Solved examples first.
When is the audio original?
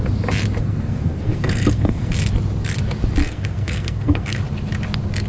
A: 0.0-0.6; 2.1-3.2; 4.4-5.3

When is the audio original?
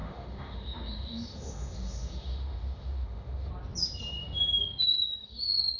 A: 3.5-5.8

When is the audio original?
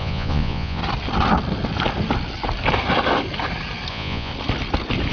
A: 0.8-3.9; 4.3-5.1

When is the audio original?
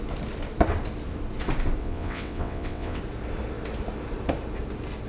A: 0.0-1.8; 3.0-5.1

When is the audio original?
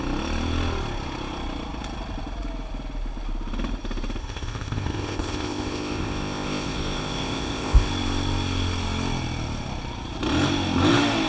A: 0.0-4.2; 7.9-11.3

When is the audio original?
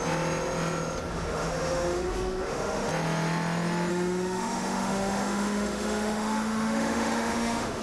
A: 0.0-1.1; 2.9-3.9